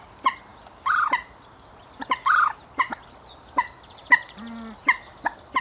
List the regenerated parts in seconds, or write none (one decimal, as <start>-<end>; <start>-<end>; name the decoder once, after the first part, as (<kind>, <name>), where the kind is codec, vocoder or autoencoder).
none